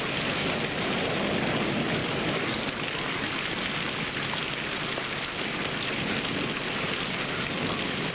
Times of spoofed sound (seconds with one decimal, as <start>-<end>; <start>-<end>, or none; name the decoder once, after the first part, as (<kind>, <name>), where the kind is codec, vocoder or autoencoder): 2.0-3.3 (codec, DAC)